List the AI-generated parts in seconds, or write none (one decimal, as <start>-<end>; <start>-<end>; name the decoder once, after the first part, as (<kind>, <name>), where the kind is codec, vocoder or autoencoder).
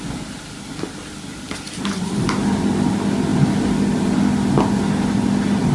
none